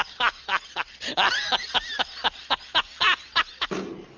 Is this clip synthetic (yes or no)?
no